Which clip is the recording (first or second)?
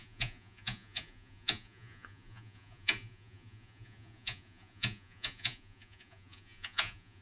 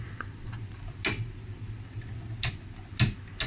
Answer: second